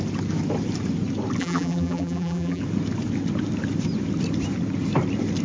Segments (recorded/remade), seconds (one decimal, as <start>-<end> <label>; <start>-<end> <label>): 0.0-1.4 recorded; 1.4-2.6 remade; 2.6-5.4 recorded